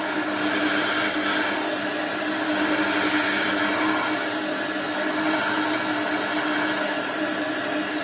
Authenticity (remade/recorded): recorded